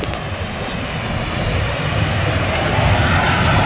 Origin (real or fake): real